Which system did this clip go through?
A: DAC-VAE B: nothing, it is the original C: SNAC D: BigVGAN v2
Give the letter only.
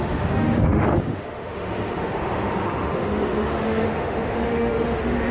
A